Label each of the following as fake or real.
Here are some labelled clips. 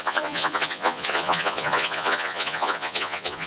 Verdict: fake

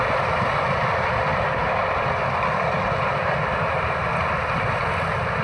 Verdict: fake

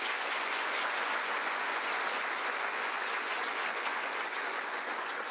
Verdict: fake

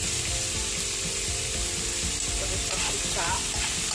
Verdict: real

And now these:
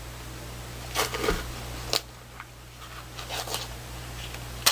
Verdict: real